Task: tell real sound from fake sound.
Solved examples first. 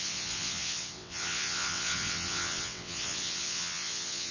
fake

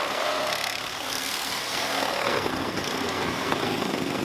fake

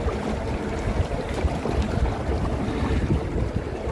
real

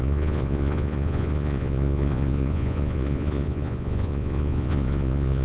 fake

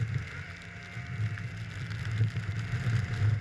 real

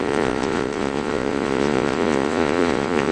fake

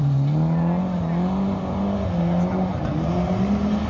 real